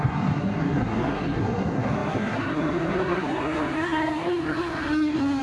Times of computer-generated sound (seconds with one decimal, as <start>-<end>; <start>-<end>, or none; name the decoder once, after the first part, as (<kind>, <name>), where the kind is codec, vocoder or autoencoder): 0.0-5.4 (codec, SNAC)